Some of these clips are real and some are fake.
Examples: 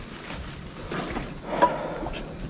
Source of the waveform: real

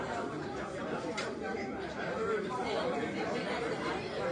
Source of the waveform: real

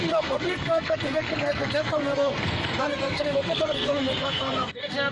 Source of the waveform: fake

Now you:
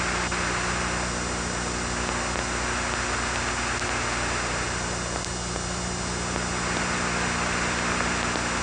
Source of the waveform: real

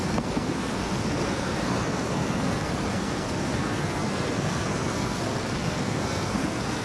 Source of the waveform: fake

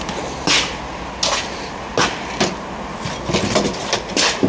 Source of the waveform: real